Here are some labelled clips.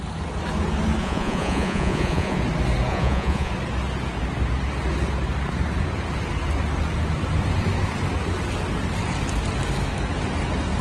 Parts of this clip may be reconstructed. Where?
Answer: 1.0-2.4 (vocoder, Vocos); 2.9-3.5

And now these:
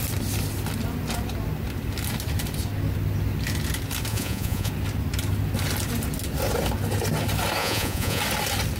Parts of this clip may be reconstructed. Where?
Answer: 4.1-4.7 (vocoder, Vocos); 7.6-8.2

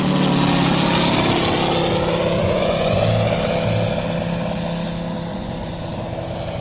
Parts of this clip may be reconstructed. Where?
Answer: 2.4-3.0 (vocoder, Vocos); 5.3-5.9

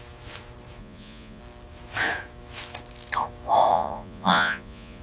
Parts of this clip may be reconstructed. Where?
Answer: 0.8-1.4 (vocoder, Vocos); 3.7-5.0